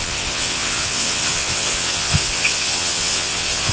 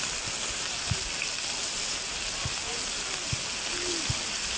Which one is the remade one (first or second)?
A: first